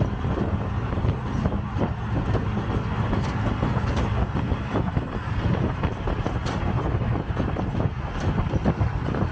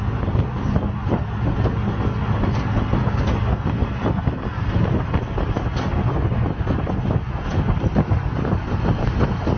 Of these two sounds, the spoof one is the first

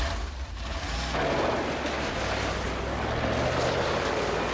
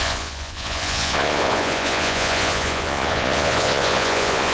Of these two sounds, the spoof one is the second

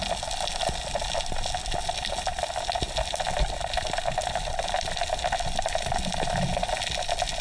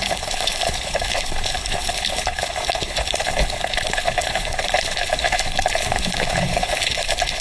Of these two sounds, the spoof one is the second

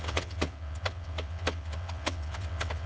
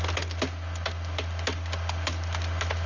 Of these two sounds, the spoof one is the first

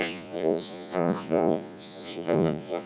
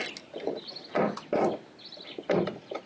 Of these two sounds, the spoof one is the first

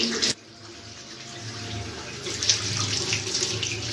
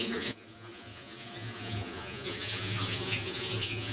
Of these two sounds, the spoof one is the second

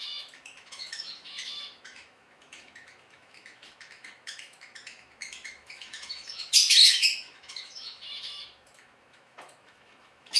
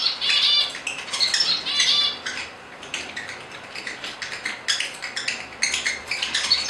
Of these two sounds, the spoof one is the first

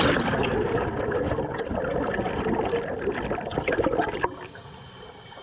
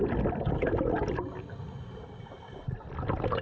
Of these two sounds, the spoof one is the first